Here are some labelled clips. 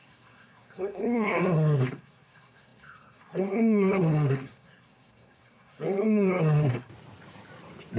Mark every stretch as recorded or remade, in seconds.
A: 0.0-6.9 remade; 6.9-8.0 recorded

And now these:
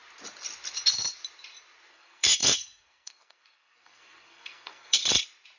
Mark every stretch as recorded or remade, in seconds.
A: 0.0-1.9 recorded; 1.9-5.0 remade; 5.0-5.6 recorded

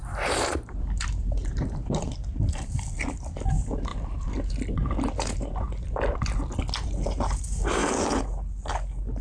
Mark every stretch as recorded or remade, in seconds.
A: 0.0-2.2 remade; 2.2-3.5 recorded; 3.5-6.2 remade; 6.2-6.8 recorded; 6.8-7.8 remade; 7.8-9.2 recorded

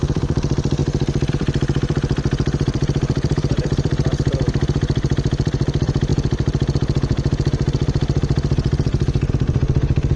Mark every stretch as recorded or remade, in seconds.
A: 0.0-0.8 remade; 0.8-1.3 recorded; 1.3-6.1 remade; 6.1-9.3 recorded; 9.3-10.2 remade

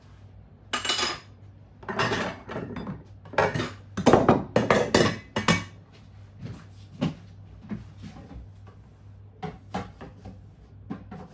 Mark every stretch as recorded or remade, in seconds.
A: 0.0-11.3 recorded

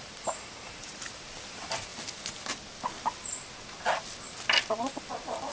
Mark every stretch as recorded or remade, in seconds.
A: 0.0-1.9 remade; 1.9-5.0 recorded; 5.0-5.5 remade